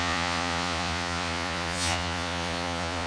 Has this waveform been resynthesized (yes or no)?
yes